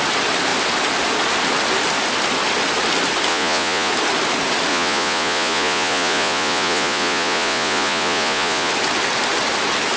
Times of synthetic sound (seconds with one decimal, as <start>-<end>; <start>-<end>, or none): 3.3-3.9; 4.7-8.7